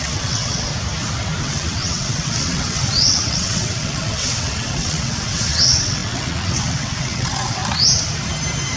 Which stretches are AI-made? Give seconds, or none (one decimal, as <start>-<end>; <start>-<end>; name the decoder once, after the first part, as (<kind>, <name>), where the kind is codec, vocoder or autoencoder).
0.0-0.7 (vocoder, WaveNeXt); 1.4-7.6